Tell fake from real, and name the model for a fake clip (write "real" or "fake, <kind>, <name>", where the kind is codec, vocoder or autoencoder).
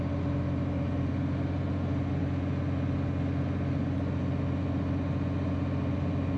real